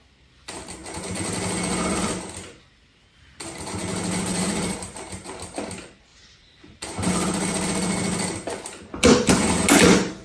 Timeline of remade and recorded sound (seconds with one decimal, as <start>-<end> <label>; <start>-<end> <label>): 0.0-4.3 recorded; 4.3-5.6 remade; 5.6-6.1 recorded; 6.1-7.1 remade; 7.1-10.2 recorded